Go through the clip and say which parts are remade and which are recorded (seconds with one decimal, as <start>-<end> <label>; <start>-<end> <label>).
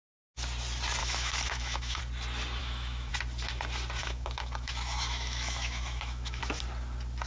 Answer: 0.0-1.0 recorded; 1.0-2.0 remade; 2.0-2.6 recorded; 2.6-3.1 remade; 3.1-4.0 recorded; 4.0-6.4 remade; 6.4-7.3 recorded